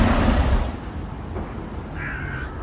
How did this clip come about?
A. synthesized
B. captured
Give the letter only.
B